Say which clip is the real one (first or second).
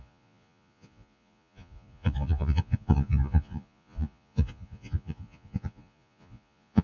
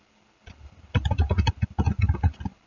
second